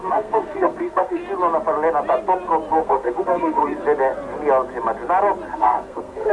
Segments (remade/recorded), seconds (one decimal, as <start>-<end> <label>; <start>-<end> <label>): 0.0-1.2 remade; 1.2-2.7 recorded; 2.7-3.6 remade; 3.6-5.5 recorded; 5.5-6.3 remade